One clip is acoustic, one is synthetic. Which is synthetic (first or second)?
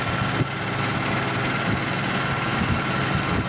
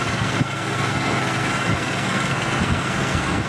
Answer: second